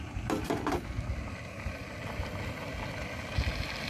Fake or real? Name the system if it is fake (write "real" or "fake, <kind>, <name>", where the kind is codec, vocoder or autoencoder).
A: real